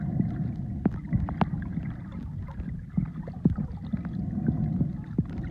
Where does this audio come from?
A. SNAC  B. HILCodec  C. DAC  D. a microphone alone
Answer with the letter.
D